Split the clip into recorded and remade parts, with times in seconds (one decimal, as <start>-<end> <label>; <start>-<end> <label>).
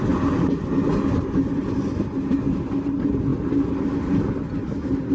0.0-5.1 recorded